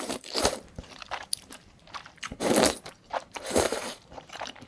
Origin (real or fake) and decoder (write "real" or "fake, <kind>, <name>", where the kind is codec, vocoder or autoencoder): fake, vocoder, BigVGAN v2